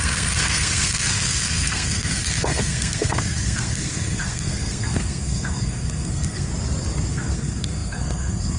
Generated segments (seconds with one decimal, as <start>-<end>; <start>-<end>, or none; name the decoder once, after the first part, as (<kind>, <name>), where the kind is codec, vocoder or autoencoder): 0.0-6.5 (codec, SNAC); 7.1-8.6